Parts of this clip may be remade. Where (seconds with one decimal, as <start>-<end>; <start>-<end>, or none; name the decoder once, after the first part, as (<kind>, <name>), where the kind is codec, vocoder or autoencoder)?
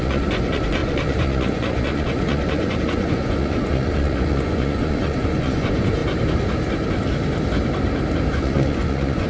0.0-6.0 (vocoder, Vocos); 8.3-9.3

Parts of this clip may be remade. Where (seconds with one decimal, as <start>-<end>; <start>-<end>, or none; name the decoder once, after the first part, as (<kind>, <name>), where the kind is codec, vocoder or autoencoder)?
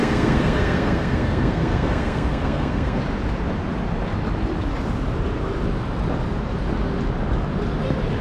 0.0-3.0 (codec, SNAC)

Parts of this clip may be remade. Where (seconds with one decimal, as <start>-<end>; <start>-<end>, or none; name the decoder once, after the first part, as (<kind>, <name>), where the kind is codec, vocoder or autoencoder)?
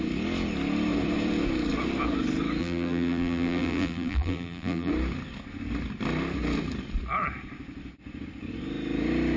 2.6-4.9 (vocoder, BigVGAN v2)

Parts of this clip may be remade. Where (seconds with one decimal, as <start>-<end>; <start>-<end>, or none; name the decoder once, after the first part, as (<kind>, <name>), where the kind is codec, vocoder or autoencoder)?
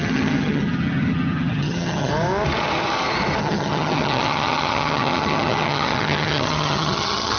0.0-2.1 (vocoder, HiFi-GAN); 3.4-7.4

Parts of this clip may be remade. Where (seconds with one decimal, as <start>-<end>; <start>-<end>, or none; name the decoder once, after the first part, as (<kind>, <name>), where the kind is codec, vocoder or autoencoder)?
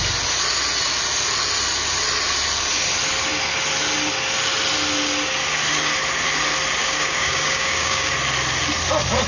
6.8-8.1 (codec, DAC)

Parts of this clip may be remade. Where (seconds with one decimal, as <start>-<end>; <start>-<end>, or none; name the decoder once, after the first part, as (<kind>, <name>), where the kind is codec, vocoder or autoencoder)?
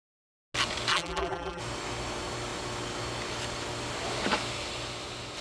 0.9-1.6 (vocoder, BigVGAN v2)